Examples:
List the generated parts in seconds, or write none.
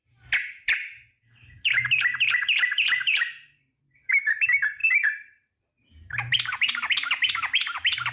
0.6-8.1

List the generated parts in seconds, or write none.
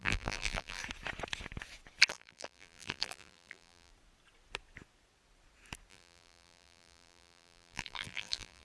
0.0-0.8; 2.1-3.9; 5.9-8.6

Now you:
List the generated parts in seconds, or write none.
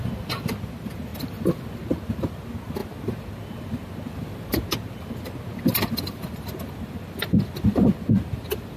none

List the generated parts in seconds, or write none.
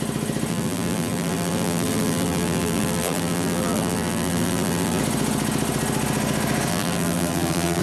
0.5-5.0; 6.7-7.8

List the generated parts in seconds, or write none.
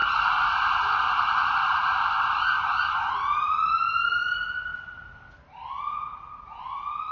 none